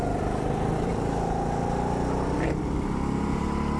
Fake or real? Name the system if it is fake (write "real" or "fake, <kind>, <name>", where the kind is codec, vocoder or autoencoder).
real